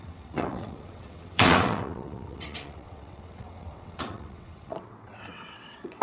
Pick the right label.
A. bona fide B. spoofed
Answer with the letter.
B